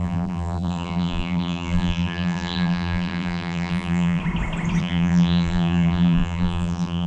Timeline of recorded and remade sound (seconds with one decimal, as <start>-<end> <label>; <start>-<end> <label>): 0.0-4.2 remade; 4.2-4.8 recorded; 4.8-7.1 remade